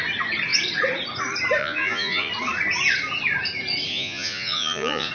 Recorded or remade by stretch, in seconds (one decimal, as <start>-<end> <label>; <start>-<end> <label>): 0.0-1.6 recorded; 1.6-2.3 remade; 2.3-3.9 recorded; 3.9-5.1 remade